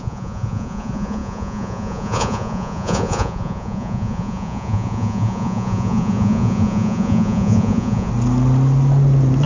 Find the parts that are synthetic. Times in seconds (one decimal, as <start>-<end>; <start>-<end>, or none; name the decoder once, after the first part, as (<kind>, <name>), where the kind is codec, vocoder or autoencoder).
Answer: 0.0-8.1 (vocoder, Vocos)